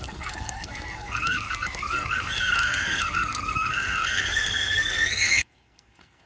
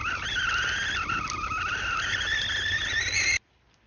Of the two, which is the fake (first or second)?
first